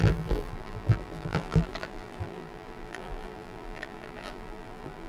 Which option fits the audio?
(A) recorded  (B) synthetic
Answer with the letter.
B